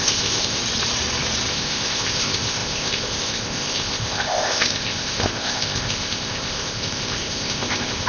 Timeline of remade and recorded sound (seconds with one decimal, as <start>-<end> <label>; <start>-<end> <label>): 0.0-0.6 remade; 0.6-1.5 recorded; 1.5-8.1 remade